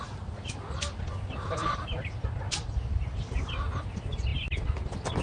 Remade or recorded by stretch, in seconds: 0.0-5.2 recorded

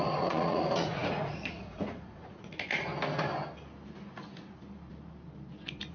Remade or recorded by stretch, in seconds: 0.0-2.9 remade; 2.9-5.9 recorded

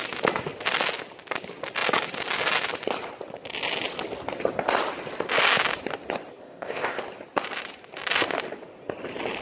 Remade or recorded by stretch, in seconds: 0.0-6.4 recorded; 6.4-7.0 remade; 7.0-9.4 recorded

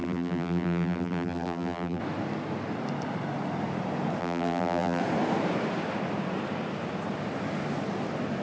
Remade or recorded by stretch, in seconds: 0.0-2.0 remade; 2.0-4.2 recorded; 4.2-5.0 remade; 5.0-8.4 recorded

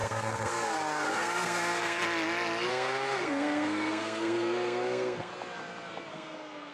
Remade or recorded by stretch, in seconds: 0.0-2.0 remade; 2.0-2.7 recorded; 2.7-5.3 remade; 5.3-6.1 recorded; 6.1-6.7 remade

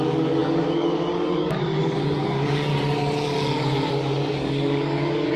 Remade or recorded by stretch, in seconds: 0.0-2.7 remade; 2.7-3.9 recorded; 3.9-5.4 remade

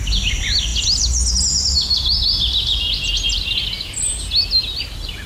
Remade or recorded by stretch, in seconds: 0.0-5.3 recorded